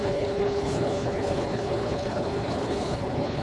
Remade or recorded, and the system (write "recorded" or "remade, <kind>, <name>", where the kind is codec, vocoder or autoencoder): remade, codec, HILCodec